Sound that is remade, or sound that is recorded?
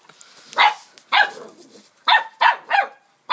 recorded